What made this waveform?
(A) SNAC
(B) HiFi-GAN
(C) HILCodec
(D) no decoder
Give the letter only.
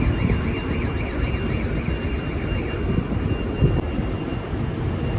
D